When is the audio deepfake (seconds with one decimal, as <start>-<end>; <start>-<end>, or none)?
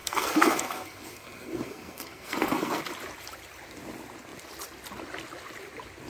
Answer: 0.0-2.8